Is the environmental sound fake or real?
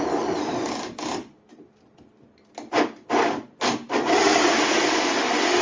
real